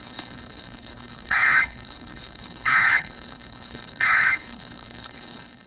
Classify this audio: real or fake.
fake